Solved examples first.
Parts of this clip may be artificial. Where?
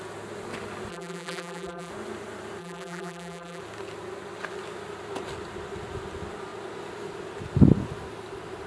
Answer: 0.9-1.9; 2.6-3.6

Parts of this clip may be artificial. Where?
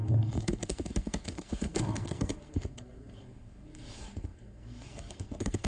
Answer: 0.0-5.7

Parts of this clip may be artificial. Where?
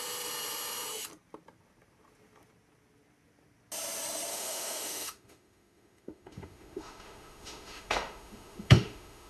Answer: 4.3-9.3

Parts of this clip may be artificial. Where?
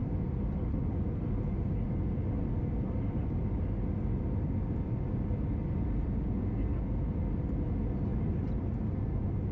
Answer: 8.1-8.8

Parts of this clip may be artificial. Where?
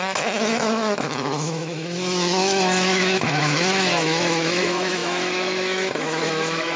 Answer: 0.0-6.8